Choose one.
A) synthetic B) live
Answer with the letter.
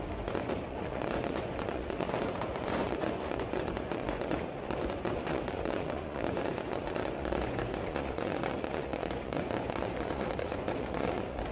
A